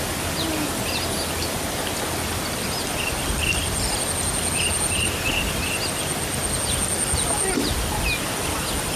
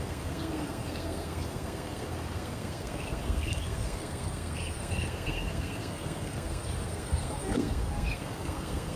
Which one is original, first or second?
first